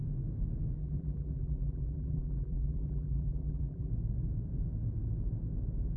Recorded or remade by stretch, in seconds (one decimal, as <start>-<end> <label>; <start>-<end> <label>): 0.0-0.8 recorded; 0.8-3.9 remade; 3.9-6.0 recorded